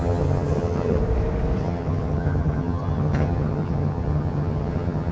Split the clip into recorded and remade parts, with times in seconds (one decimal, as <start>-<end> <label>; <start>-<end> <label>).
0.0-1.0 remade; 1.0-1.6 recorded; 1.6-5.1 remade